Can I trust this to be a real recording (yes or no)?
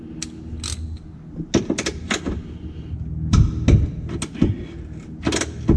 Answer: yes